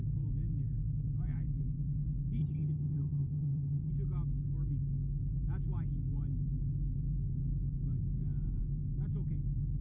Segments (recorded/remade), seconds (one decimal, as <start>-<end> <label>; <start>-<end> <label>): 0.0-2.4 recorded; 2.4-3.9 remade; 3.9-9.8 recorded